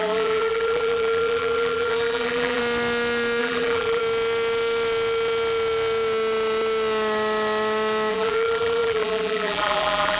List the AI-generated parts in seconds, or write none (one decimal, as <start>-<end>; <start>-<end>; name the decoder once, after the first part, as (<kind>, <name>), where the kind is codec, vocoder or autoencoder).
0.0-2.6 (vocoder, BigVGAN v2); 3.4-4.0; 8.1-10.2